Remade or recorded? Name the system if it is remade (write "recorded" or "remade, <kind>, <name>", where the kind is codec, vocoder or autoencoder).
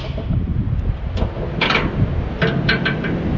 recorded